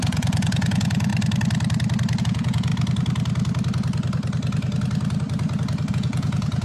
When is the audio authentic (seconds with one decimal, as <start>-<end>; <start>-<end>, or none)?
1.1-2.2; 2.7-5.9